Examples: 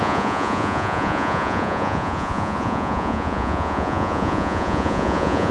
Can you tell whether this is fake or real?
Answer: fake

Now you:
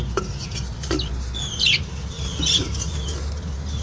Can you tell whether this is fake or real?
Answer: fake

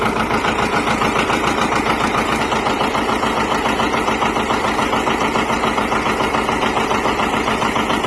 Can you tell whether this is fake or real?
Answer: fake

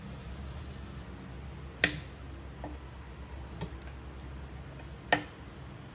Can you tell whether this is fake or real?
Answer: real